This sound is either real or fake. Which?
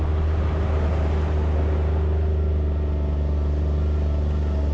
real